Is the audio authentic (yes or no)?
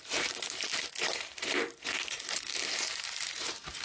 no